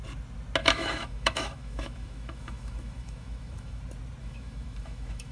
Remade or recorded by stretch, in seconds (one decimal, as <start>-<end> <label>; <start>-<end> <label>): 0.0-0.6 recorded; 0.6-3.8 remade; 3.8-4.2 recorded; 4.2-5.3 remade